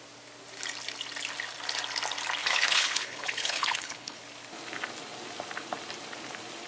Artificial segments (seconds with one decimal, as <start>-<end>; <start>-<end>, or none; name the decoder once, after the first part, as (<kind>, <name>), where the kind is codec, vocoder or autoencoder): 2.4-4.2 (codec, HILCodec)